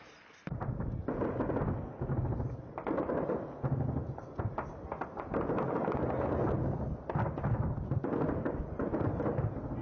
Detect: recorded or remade recorded